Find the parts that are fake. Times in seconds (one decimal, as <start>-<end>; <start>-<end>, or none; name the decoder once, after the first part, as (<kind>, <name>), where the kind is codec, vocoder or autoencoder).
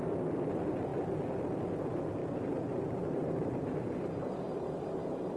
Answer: 2.2-5.4 (vocoder, BigVGAN v2)